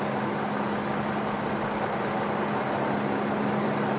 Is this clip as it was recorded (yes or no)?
yes